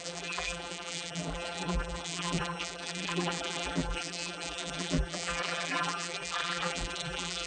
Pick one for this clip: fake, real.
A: fake